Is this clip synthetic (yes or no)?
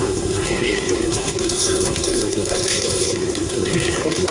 yes